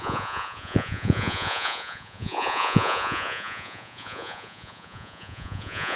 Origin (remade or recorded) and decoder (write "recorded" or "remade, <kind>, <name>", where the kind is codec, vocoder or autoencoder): remade, vocoder, Vocos